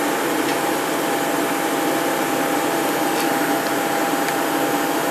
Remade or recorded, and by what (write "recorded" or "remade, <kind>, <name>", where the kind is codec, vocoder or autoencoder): recorded